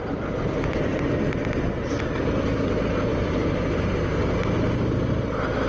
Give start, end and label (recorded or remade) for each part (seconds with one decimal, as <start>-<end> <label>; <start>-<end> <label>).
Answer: 0.0-5.7 recorded